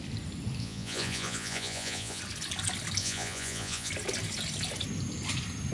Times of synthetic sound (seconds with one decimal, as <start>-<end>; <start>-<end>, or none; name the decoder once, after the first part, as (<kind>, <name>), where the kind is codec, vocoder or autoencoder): 0.6-2.2 (vocoder, Vocos); 3.0-3.9